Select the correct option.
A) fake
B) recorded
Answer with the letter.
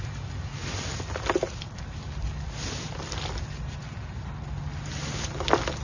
B